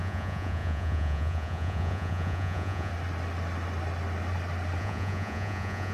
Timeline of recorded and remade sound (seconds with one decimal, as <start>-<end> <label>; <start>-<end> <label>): 0.0-2.9 remade; 2.9-4.8 recorded; 4.8-5.9 remade